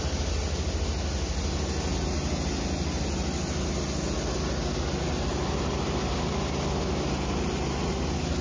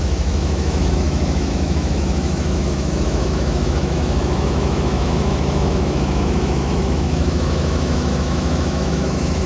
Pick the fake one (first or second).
second